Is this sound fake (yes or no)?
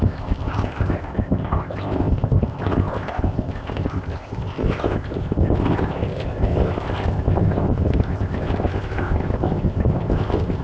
yes